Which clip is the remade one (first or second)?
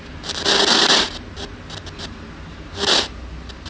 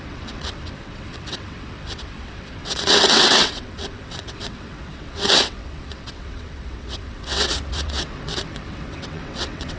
second